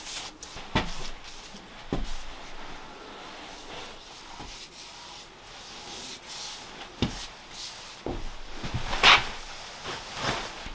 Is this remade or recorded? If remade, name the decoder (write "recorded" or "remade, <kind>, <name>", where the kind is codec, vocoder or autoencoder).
recorded